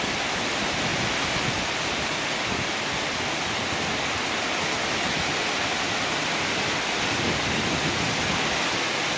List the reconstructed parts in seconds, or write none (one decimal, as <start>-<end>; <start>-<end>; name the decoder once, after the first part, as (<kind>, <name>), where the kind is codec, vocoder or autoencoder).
none